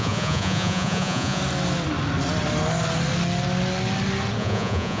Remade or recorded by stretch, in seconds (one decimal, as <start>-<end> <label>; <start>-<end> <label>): 0.0-1.4 remade; 1.4-4.4 recorded; 4.4-5.0 remade